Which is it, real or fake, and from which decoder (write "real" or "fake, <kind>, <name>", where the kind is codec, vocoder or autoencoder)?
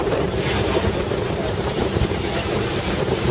fake, vocoder, BigVGAN v2